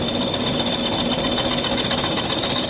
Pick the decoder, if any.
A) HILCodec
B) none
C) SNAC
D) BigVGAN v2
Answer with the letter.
B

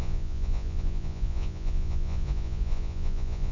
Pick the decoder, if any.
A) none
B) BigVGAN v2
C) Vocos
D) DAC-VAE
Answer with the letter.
C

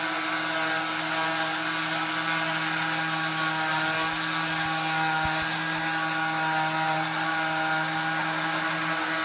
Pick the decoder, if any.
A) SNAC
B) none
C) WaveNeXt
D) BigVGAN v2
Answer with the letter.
B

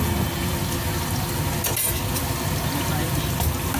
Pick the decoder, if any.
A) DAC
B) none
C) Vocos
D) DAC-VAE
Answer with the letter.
B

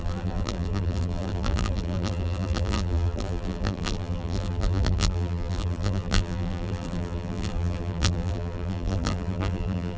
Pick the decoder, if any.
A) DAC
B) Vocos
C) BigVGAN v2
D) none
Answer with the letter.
C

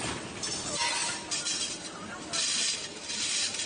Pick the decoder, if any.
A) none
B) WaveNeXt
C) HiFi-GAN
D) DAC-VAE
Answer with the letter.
A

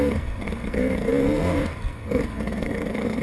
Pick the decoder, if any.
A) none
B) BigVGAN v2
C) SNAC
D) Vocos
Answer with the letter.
C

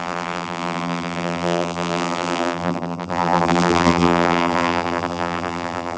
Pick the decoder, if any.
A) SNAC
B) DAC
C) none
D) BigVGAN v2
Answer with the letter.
D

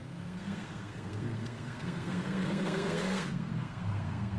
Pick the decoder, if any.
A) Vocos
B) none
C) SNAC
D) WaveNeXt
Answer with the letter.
C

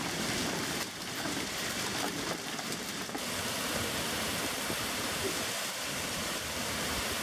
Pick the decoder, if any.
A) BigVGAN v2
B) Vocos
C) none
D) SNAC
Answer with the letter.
A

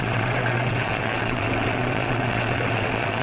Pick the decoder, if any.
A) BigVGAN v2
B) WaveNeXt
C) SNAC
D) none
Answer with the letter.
B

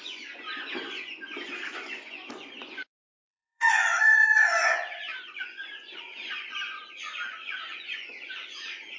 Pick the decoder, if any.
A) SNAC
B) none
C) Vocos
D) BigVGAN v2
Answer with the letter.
C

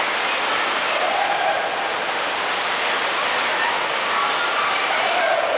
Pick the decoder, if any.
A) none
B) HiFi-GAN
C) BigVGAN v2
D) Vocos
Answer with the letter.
A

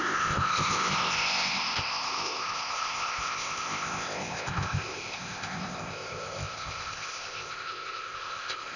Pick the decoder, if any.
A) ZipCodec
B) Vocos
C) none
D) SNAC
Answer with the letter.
A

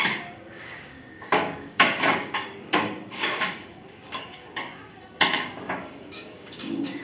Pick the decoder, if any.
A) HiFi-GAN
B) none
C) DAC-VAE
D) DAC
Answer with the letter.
D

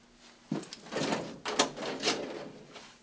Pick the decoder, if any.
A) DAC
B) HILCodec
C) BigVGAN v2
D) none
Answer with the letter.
D